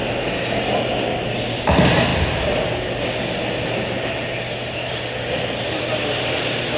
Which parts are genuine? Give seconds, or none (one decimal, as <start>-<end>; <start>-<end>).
0.0-6.8